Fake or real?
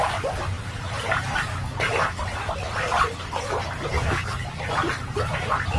fake